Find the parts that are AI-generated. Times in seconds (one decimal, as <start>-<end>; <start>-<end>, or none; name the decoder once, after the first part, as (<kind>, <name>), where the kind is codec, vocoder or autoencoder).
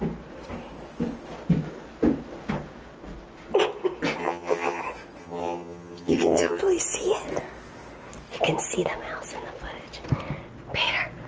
4.2-4.8 (vocoder, HiFi-GAN); 5.2-6.6